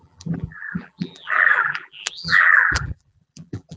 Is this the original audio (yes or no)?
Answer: no